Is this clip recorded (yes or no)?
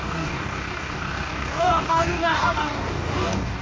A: no